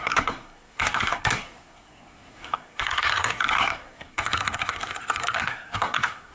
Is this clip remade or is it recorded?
remade